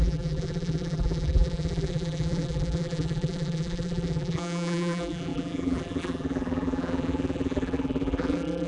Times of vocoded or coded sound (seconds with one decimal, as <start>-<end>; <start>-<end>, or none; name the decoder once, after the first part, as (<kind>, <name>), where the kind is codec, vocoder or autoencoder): 0.0-8.7 (vocoder, BigVGAN v2)